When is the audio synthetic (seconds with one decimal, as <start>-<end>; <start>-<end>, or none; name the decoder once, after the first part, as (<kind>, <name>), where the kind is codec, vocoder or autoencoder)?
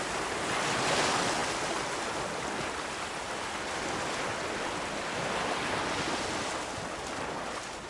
none